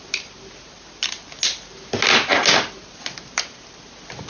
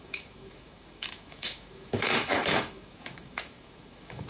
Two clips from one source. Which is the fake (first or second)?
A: second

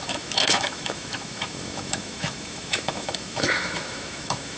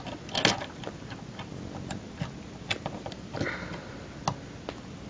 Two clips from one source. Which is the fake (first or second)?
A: first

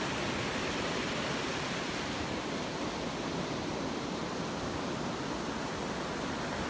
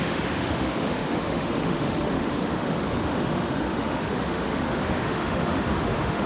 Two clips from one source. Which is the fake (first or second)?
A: second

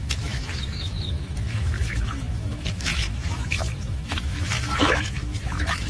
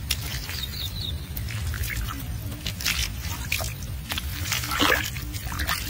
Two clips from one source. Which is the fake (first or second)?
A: first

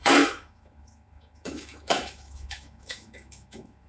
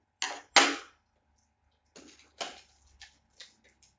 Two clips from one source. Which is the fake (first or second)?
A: first